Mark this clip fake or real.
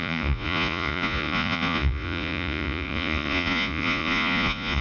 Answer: fake